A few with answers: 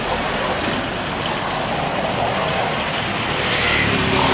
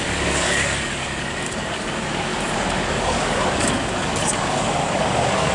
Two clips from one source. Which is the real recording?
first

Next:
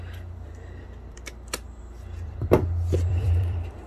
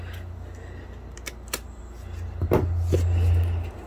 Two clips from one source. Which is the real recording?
second